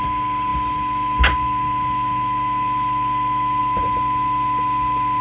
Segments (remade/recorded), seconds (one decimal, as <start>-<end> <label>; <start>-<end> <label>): 0.0-5.2 recorded